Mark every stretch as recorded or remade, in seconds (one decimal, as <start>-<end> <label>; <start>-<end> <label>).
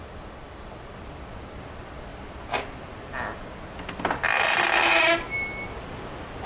0.0-6.5 recorded